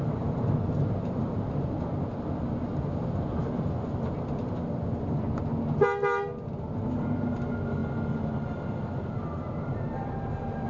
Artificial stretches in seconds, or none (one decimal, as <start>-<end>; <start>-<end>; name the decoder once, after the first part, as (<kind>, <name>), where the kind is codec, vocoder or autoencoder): 2.7-3.4 (vocoder, BigVGAN v2)